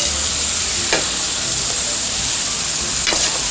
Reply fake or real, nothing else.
fake